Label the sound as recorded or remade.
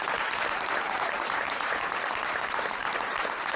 remade